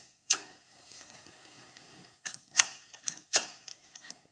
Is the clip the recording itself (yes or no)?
no